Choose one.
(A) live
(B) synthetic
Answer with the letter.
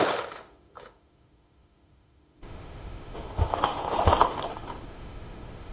B